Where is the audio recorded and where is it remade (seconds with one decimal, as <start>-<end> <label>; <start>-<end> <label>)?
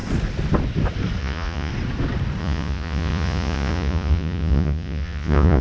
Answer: 0.0-1.2 recorded; 1.2-1.7 remade; 1.7-2.4 recorded; 2.4-5.6 remade